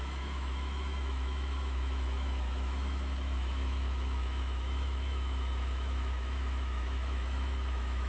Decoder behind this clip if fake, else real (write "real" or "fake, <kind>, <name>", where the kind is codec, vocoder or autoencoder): fake, autoencoder, DAC-VAE